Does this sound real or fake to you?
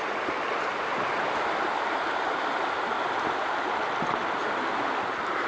real